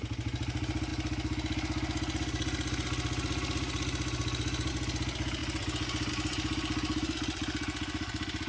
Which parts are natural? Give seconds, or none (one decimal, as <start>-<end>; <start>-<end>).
0.0-8.5